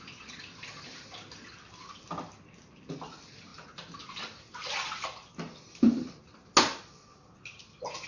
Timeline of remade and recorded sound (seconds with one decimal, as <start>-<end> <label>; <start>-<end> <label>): 0.0-8.1 recorded